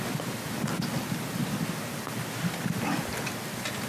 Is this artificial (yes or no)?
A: no